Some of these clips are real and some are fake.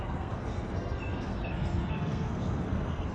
fake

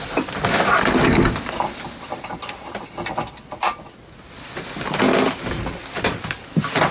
real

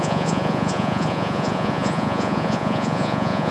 fake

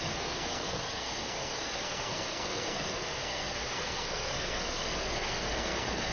fake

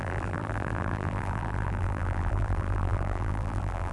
fake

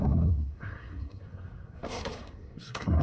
fake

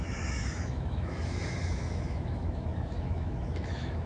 fake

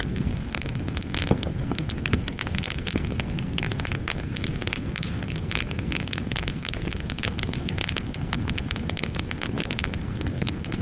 fake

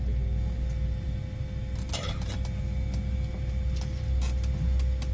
real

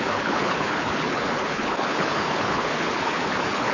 fake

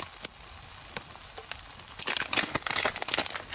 real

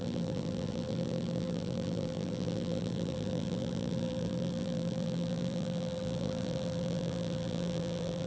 fake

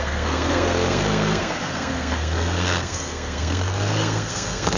fake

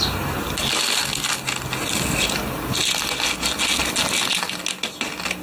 real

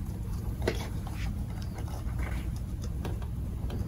fake